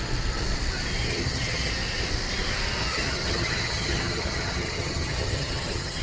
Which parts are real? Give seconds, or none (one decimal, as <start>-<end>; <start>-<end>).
0.0-1.0; 1.7-2.8